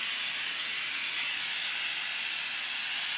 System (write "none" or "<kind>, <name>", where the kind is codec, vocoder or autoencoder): none